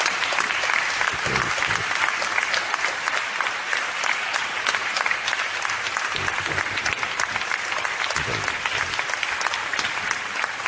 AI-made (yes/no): no